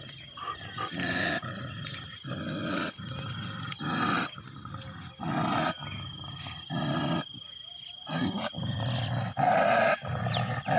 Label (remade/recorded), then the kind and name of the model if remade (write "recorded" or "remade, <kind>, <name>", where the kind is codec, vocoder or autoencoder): recorded